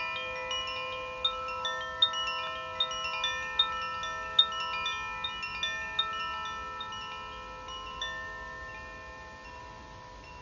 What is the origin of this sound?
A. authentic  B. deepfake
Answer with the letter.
A